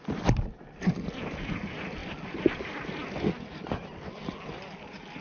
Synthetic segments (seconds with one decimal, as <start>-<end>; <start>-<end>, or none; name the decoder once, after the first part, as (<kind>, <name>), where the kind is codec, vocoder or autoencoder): none